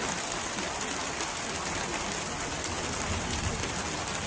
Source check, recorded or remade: recorded